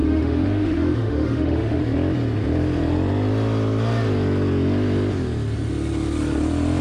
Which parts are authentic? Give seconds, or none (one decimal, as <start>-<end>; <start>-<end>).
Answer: 1.8-6.8